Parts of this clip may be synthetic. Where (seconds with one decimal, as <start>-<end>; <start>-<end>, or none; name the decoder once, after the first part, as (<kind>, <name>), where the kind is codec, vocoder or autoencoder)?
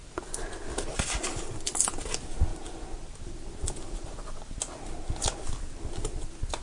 none